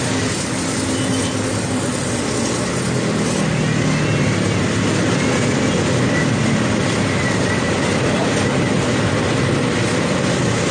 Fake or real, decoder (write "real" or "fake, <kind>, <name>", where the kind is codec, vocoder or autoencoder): real